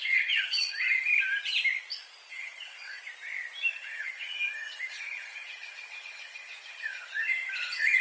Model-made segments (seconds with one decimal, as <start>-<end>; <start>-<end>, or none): 0.0-1.1; 2.3-3.0; 3.7-8.0